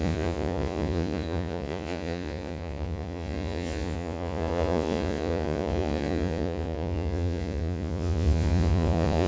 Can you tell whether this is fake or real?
fake